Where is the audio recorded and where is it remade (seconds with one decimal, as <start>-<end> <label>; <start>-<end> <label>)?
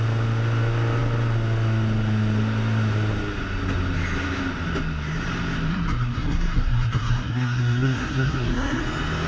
0.0-5.7 recorded; 5.7-8.8 remade; 8.8-9.3 recorded